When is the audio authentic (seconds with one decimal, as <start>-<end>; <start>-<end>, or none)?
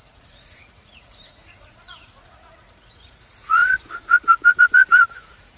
none